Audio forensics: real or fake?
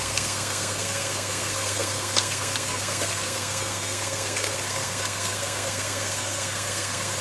fake